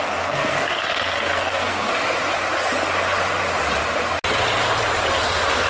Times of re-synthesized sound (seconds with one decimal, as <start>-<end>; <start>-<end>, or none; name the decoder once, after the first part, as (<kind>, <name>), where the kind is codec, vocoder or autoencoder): 0.0-1.9 (codec, SNAC)